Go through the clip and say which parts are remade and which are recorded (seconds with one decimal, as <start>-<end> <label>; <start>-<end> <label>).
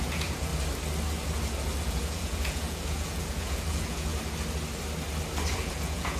0.0-0.5 remade; 0.5-1.8 recorded; 1.8-4.1 remade; 4.1-5.5 recorded; 5.5-6.2 remade